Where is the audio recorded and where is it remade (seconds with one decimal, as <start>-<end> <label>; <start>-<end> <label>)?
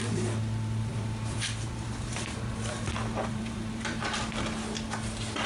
0.0-0.9 recorded; 0.9-4.2 remade; 4.2-5.5 recorded